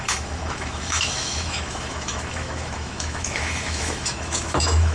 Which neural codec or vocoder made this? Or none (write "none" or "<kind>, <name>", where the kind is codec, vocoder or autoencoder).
autoencoder, DAC-VAE